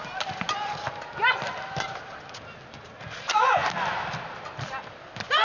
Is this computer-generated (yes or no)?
no